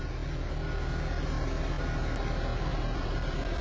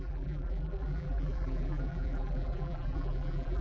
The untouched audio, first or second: first